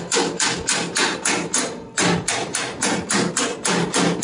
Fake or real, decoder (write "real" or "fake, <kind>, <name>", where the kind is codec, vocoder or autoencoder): real